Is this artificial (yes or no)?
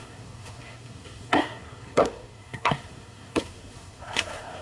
yes